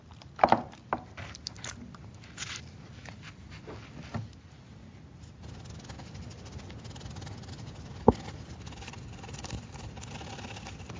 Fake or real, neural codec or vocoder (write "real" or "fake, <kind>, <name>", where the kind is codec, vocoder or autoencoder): real